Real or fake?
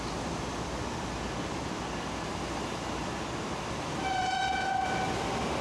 real